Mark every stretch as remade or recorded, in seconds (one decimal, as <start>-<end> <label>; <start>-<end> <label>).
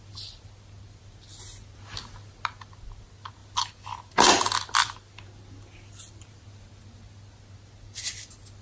0.0-8.6 recorded